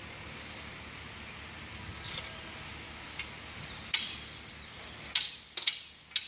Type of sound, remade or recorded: recorded